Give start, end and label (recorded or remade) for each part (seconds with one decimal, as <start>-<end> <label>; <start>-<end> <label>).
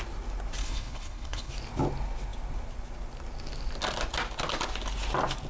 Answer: 0.0-0.6 recorded; 0.6-1.5 remade; 1.5-5.5 recorded